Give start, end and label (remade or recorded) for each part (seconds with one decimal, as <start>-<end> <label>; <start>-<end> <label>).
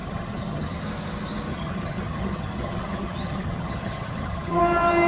0.0-0.8 remade; 0.8-1.5 recorded; 1.5-4.6 remade; 4.6-5.1 recorded